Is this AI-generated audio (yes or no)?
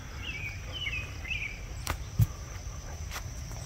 no